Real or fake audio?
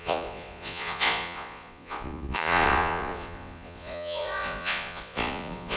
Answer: fake